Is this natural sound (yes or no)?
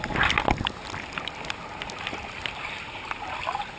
yes